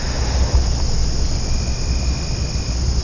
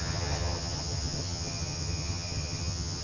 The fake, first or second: second